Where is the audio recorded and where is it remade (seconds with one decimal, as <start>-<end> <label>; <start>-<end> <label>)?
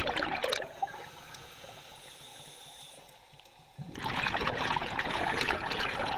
0.0-6.2 remade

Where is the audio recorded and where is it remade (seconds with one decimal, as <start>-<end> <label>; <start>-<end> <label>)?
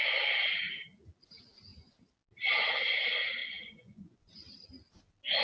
0.0-3.4 recorded; 3.4-4.3 remade; 4.3-5.4 recorded